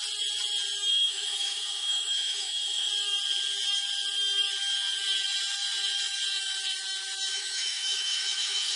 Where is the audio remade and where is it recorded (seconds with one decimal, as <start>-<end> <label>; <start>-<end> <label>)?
0.0-0.9 recorded; 0.9-2.9 remade; 2.9-7.3 recorded; 7.3-8.8 remade